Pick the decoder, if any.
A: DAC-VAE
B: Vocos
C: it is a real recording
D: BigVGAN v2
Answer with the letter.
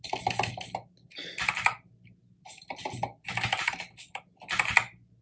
C